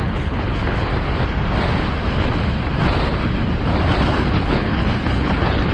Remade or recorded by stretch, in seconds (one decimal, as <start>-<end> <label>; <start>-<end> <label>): 0.0-0.9 remade; 0.9-4.3 recorded; 4.3-5.7 remade